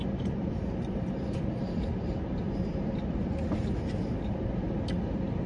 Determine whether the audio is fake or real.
real